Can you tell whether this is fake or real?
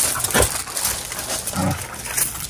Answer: real